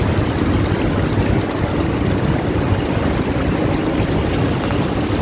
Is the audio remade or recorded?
recorded